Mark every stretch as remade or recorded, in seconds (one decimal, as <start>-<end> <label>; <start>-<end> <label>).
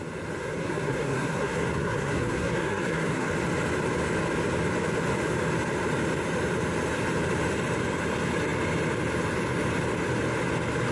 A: 0.0-0.4 recorded; 0.4-3.3 remade; 3.3-10.9 recorded